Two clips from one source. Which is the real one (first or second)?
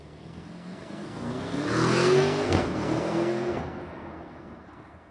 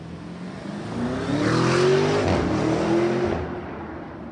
second